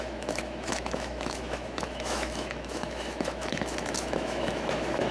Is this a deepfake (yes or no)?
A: yes